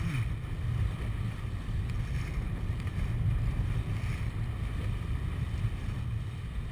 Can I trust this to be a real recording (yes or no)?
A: yes